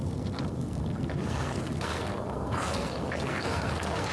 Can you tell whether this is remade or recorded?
remade